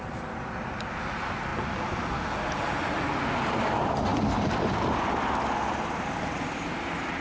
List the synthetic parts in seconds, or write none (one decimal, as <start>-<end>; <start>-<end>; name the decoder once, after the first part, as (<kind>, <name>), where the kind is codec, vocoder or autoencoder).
none